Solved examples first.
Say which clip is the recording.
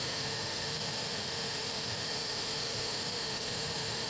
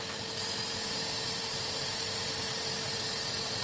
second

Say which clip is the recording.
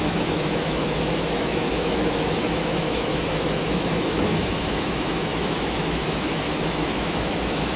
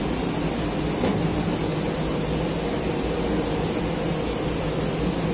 second